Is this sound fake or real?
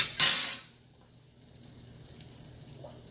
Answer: real